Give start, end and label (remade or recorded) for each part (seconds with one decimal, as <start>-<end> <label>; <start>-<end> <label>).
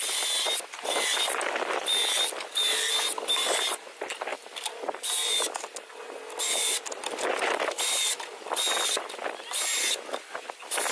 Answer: 0.0-10.9 recorded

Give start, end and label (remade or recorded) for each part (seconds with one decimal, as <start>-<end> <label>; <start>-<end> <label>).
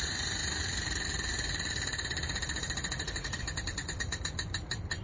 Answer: 0.0-5.0 remade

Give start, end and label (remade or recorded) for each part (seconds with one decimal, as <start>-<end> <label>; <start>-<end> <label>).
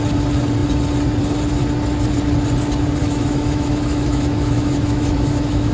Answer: 0.0-3.0 recorded; 3.0-5.7 remade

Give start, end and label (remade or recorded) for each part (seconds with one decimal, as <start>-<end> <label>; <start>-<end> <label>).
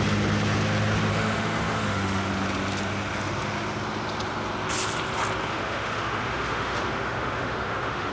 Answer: 0.0-1.1 recorded; 1.1-2.3 remade; 2.3-5.5 recorded; 5.5-8.1 remade